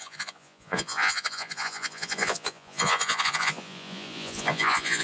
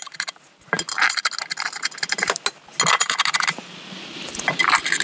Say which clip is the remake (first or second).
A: first